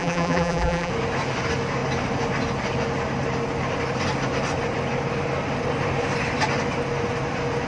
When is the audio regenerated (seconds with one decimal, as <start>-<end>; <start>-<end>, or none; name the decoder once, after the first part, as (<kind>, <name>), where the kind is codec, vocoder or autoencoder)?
0.0-0.9 (vocoder, BigVGAN v2)